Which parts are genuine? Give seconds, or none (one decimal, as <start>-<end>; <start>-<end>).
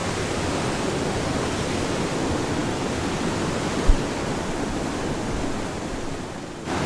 0.0-6.9